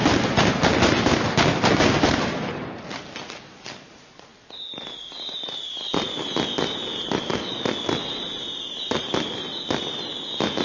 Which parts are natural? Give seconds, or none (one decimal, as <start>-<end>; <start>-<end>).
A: 0.0-10.6